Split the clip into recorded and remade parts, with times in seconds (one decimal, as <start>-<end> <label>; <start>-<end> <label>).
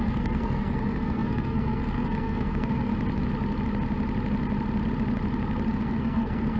0.0-2.9 remade; 2.9-5.7 recorded; 5.7-6.6 remade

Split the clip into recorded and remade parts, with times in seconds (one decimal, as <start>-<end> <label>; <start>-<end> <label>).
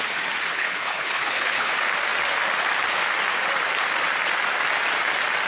0.0-0.5 recorded; 0.5-1.7 remade; 1.7-5.5 recorded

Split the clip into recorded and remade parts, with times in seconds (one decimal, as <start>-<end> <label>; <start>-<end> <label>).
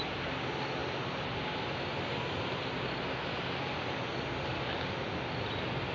0.0-5.9 recorded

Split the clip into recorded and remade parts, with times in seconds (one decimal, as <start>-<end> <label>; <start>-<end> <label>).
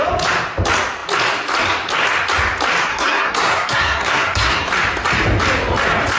0.0-2.9 recorded; 2.9-4.7 remade; 4.7-6.2 recorded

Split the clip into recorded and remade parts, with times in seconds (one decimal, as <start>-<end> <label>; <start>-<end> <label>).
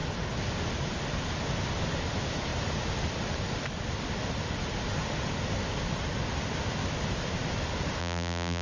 0.0-8.0 recorded; 8.0-8.6 remade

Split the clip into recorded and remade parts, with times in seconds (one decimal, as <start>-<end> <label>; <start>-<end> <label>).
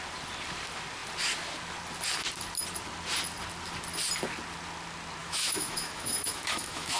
0.0-5.2 recorded; 5.2-7.0 remade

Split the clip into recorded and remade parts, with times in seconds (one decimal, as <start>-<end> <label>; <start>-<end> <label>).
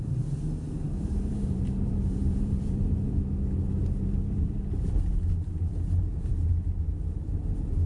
0.0-0.8 recorded; 0.8-3.1 remade; 3.1-3.8 recorded; 3.8-4.9 remade; 4.9-7.0 recorded; 7.0-7.5 remade; 7.5-7.9 recorded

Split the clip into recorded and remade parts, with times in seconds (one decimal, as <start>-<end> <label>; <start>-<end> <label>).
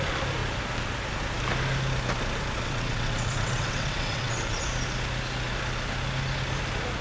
0.0-2.6 recorded; 2.6-4.6 remade; 4.6-7.0 recorded